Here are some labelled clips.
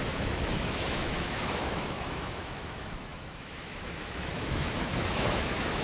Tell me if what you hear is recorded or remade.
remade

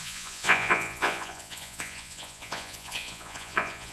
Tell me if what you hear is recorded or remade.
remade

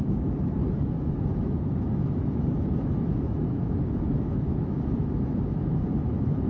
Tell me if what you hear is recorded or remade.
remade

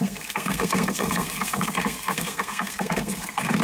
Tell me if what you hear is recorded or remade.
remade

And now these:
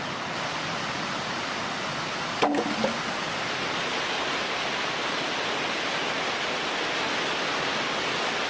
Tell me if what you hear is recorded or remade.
recorded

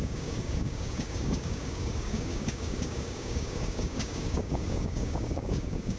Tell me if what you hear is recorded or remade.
remade